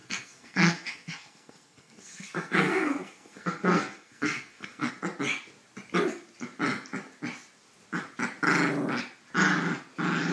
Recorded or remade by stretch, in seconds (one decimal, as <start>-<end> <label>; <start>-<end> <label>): 0.0-4.9 remade; 4.9-10.3 recorded